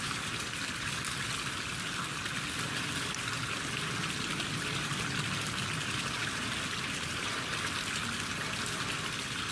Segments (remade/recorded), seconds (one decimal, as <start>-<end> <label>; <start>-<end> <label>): 0.0-9.5 recorded